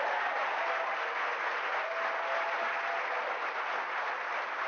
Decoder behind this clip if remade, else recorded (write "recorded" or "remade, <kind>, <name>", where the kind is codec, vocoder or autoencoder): recorded